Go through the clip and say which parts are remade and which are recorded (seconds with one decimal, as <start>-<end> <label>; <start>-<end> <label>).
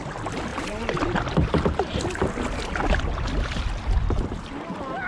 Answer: 0.0-5.1 recorded